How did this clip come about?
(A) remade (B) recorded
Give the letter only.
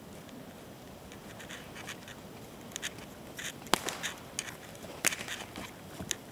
B